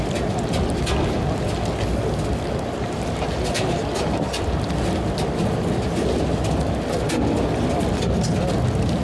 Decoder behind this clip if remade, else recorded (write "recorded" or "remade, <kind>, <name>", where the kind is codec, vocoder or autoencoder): recorded